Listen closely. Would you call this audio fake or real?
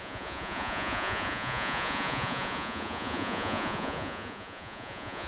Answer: fake